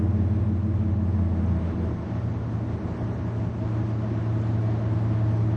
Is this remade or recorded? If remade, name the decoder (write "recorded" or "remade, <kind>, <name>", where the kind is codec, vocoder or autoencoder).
recorded